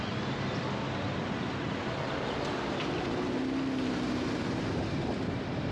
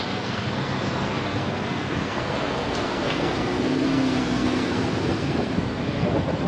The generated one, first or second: second